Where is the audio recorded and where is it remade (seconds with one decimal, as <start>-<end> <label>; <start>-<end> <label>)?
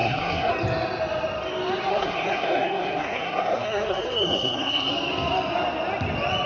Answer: 0.0-0.5 remade; 0.5-1.9 recorded; 1.9-4.9 remade; 4.9-6.5 recorded